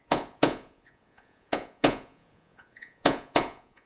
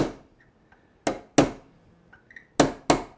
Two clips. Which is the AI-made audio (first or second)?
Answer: first